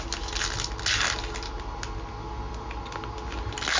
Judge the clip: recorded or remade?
recorded